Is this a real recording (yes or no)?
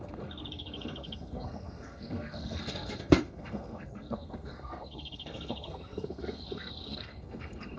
no